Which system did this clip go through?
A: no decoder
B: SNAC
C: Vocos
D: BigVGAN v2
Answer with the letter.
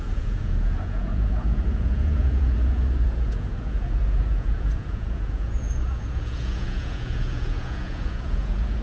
C